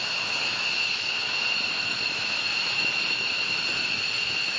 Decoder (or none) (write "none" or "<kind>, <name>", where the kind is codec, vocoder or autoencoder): autoencoder, DAC-VAE